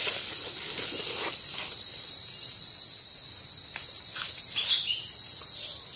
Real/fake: real